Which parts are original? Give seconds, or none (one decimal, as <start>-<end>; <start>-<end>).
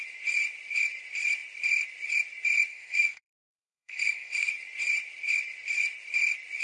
0.0-2.7; 4.5-6.6